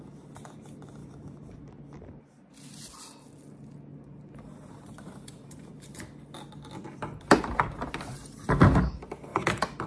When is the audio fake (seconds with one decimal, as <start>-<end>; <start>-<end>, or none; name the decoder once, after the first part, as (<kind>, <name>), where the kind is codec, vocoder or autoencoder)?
1.0-1.6 (vocoder, BigVGAN v2); 3.9-6.0; 9.3-9.9